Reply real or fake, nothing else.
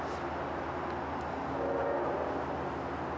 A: real